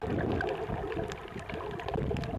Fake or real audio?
real